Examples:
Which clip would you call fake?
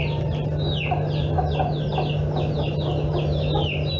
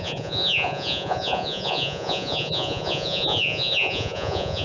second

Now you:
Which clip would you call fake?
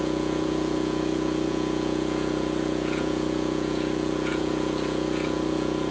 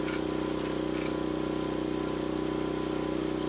first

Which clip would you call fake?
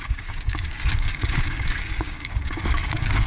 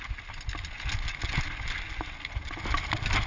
first